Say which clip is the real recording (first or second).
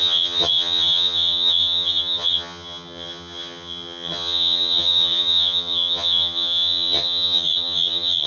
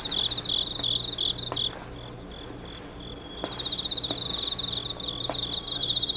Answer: second